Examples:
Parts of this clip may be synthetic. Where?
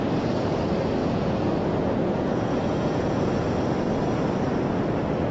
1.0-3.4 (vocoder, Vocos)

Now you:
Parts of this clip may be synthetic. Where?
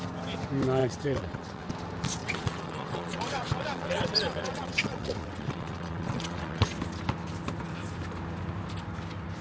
0.8-1.7 (vocoder, WaveNeXt); 2.2-6.7